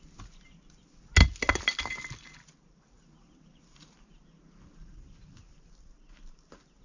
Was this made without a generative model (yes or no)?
yes